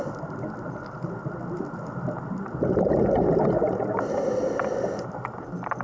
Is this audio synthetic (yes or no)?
no